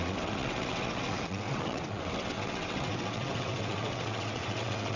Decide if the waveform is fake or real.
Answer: fake